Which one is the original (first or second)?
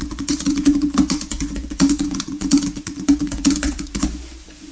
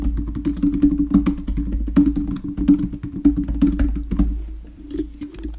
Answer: second